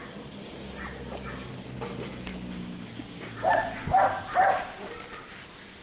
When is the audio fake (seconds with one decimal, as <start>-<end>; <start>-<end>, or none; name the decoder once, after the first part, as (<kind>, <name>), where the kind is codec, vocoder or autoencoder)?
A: none